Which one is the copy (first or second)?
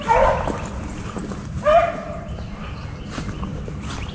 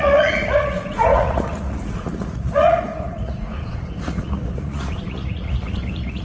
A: second